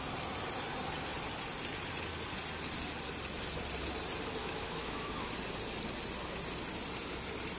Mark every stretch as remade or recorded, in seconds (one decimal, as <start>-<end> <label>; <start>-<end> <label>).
0.0-4.4 recorded; 4.4-5.3 remade; 5.3-7.6 recorded